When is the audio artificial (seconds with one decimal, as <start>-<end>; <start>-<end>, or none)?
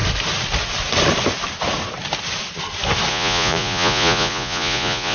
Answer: 3.1-5.1